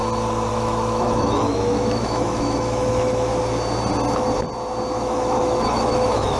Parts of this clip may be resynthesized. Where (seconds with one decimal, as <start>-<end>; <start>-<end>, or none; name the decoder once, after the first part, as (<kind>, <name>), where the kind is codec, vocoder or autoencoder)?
0.5-3.3 (autoencoder, DAC-VAE); 5.0-6.4